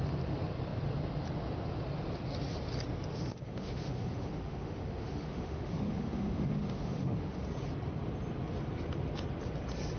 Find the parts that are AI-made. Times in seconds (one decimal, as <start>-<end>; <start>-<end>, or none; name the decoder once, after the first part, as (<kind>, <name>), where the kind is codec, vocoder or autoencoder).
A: 3.1-7.4 (autoencoder, DAC-VAE)